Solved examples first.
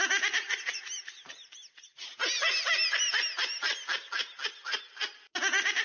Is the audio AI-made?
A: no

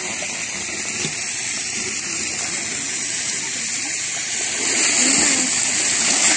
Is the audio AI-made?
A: no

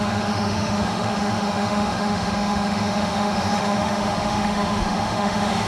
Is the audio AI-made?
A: yes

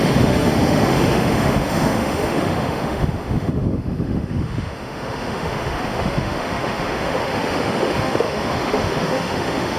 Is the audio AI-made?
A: yes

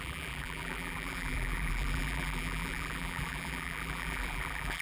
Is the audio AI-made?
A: yes